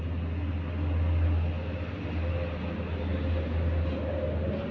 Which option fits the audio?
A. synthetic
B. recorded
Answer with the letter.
B